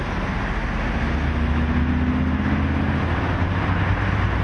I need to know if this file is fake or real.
real